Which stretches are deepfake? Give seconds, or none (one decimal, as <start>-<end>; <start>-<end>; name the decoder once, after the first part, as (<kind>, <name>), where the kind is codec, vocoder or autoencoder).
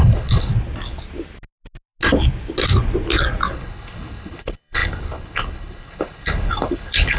0.0-0.5 (codec, HILCodec); 3.5-7.2